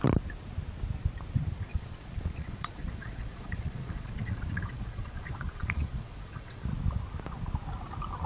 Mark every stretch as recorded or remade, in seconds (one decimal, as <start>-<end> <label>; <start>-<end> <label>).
0.0-1.7 recorded; 1.7-6.6 remade; 6.6-8.3 recorded